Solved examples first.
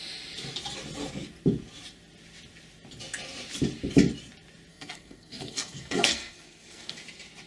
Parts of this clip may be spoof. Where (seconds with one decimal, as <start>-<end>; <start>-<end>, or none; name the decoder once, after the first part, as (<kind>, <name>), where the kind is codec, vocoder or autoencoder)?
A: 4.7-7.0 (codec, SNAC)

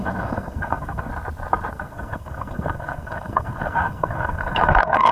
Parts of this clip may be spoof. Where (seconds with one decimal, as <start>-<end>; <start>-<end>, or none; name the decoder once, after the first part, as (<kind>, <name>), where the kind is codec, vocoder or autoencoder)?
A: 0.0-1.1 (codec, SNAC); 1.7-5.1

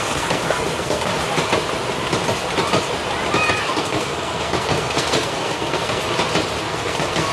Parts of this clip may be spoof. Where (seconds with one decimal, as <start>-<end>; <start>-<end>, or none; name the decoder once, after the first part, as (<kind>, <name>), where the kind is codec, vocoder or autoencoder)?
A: 0.0-1.1 (codec, SNAC); 3.5-6.0; 6.6-7.3